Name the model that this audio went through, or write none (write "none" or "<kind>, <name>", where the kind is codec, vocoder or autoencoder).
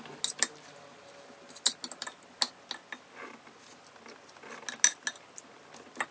none